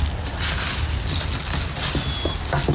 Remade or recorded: recorded